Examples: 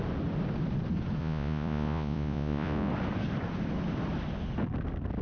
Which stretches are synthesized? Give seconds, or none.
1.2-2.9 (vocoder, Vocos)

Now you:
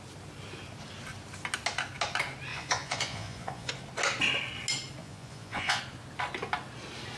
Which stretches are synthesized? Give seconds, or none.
2.5-3.7 (vocoder, Vocos); 5.0-5.8

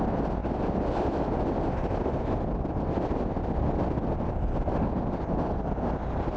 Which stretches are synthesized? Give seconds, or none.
none

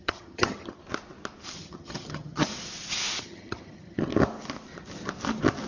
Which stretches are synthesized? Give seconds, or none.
0.0-0.8 (vocoder, HiFi-GAN); 1.6-2.5; 3.2-4.1

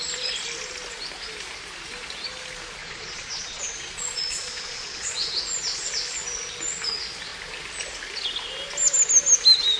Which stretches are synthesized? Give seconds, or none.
2.8-5.4 (vocoder, Vocos)

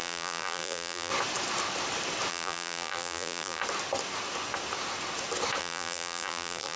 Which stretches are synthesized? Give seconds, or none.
0.0-1.1 (vocoder, BigVGAN v2); 2.3-3.6; 5.6-6.8

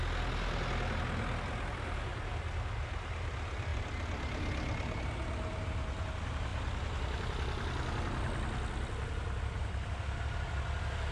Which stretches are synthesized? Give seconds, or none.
2.1-2.9 (vocoder, BigVGAN v2)